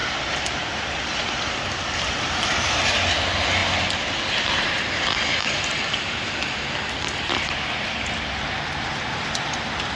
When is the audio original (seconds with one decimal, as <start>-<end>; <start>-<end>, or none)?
0.0-10.0